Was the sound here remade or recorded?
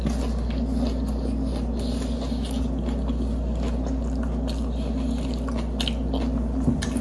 recorded